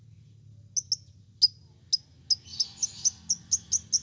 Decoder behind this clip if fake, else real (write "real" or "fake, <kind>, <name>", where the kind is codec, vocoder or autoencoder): real